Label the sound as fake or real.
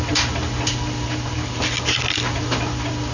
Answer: real